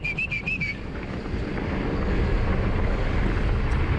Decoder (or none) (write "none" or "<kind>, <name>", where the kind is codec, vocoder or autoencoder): none